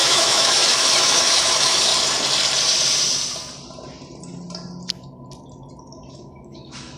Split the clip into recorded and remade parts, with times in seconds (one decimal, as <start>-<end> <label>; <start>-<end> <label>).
0.0-1.9 remade; 1.9-6.1 recorded; 6.1-7.0 remade